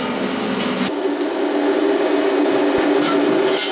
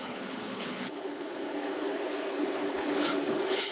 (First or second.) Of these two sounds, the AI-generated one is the second